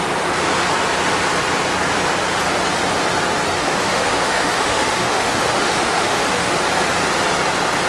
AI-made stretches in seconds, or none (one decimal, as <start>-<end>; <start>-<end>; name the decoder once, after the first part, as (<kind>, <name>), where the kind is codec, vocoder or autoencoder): 3.6-6.6 (autoencoder, DAC-VAE)